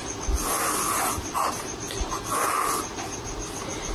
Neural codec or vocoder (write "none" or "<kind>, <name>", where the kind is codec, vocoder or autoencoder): none